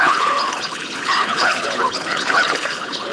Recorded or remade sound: remade